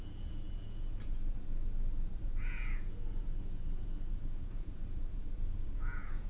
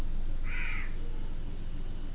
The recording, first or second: second